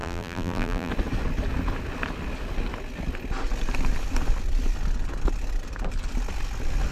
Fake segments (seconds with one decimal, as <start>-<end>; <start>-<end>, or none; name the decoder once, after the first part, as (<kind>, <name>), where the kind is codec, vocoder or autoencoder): 0.0-0.9 (vocoder, BigVGAN v2)